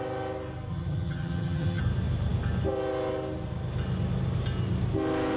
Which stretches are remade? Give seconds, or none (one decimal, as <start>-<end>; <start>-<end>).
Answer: 0.7-1.8